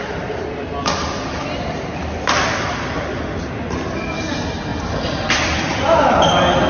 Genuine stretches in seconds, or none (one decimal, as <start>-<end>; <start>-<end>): 0.0-5.7; 6.3-6.7